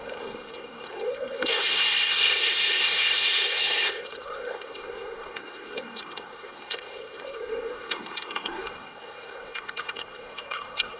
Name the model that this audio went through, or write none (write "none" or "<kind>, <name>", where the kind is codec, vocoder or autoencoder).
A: codec, SNAC